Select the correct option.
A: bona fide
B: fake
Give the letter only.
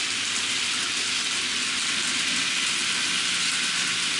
A